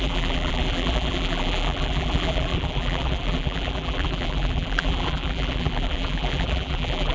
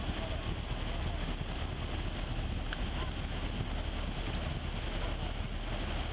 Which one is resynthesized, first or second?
first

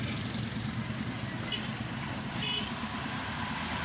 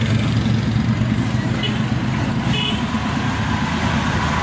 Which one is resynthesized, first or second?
first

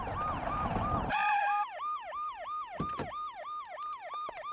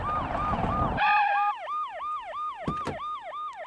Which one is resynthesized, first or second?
first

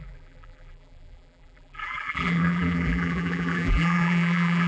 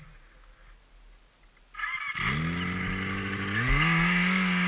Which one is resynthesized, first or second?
first